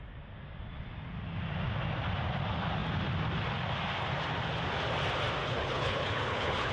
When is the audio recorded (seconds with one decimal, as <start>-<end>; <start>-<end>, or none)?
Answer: 0.0-5.4